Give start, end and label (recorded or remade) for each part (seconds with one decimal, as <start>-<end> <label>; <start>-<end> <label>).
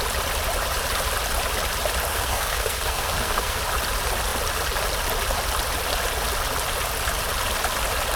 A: 0.0-2.1 recorded; 2.1-3.6 remade; 3.6-8.2 recorded